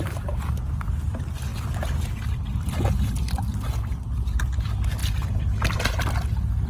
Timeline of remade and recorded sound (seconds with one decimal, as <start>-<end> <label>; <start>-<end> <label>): 0.0-6.7 recorded